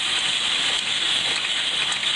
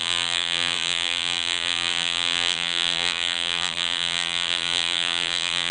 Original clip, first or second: first